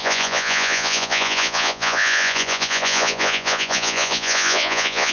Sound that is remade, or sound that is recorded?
remade